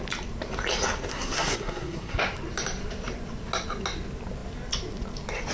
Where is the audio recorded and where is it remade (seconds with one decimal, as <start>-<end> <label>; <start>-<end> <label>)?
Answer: 0.0-1.1 recorded; 1.1-2.2 remade; 2.2-5.5 recorded